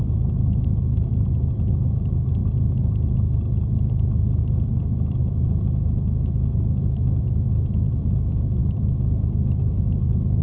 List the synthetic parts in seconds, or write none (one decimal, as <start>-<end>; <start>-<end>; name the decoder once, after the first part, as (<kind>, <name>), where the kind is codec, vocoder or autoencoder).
0.0-2.4 (autoencoder, DAC-VAE); 4.8-10.4